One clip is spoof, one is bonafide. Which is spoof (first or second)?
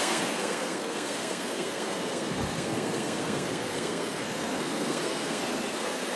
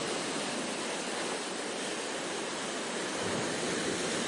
first